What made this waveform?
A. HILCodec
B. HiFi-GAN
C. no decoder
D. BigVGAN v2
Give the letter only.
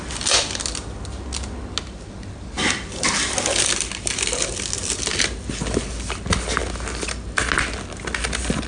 C